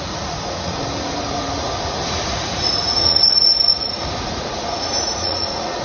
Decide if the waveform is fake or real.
fake